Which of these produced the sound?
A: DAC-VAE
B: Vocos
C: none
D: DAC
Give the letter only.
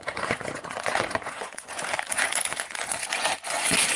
B